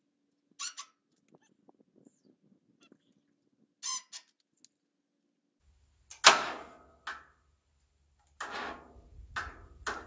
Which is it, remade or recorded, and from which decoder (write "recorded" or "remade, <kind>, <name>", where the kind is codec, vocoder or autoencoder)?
recorded